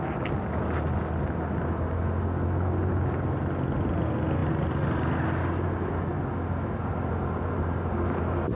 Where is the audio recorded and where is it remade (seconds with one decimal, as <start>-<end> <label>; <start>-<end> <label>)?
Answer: 0.0-8.5 recorded